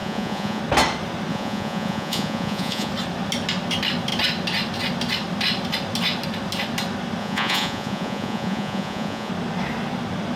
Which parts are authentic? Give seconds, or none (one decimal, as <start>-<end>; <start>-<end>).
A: 0.6-1.3; 2.9-7.2; 9.3-10.4